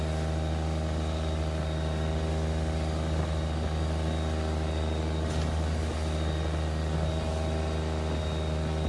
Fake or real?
real